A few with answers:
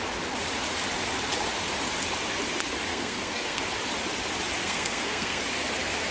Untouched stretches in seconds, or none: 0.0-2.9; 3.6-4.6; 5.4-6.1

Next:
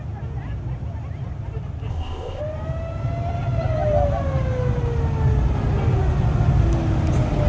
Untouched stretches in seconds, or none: 0.0-1.9; 2.4-7.5

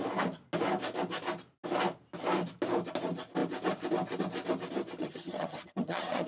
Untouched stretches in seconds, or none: 0.0-5.0

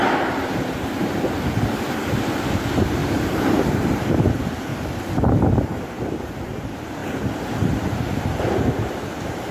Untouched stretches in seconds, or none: 0.0-0.8; 4.7-5.5; 7.0-8.2

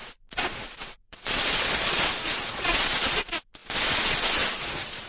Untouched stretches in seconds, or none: none

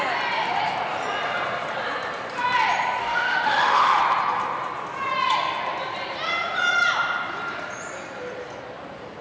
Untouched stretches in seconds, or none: 0.0-3.0; 4.0-9.2

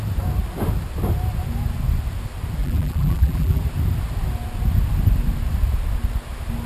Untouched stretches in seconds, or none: 0.0-2.6; 3.6-6.7